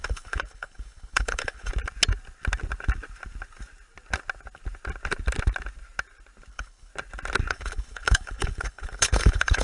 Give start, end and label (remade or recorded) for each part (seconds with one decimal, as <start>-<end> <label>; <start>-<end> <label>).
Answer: 0.0-1.7 remade; 1.7-6.5 recorded; 6.5-6.9 remade; 6.9-7.5 recorded; 7.5-9.6 remade